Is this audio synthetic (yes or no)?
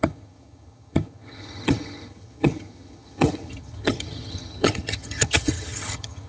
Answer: yes